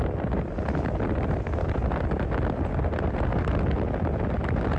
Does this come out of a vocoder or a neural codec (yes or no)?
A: no